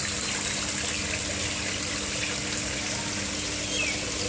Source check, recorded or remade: recorded